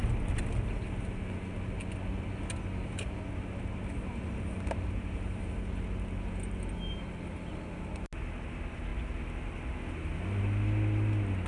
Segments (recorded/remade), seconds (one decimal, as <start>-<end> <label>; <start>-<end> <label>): 0.0-11.5 recorded